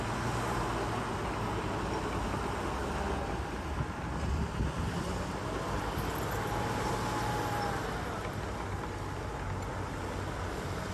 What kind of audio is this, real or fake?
real